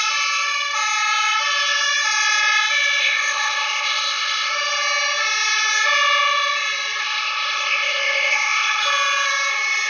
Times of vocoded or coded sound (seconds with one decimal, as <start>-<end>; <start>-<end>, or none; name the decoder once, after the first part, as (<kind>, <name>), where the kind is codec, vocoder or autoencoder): 3.0-4.5 (codec, ZipCodec); 7.0-8.8